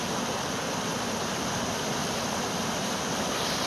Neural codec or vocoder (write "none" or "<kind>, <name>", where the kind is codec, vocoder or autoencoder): none